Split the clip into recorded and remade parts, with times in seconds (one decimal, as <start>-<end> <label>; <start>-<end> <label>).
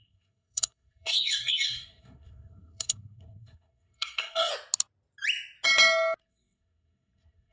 0.0-4.5 remade; 4.5-6.2 recorded; 6.2-7.5 remade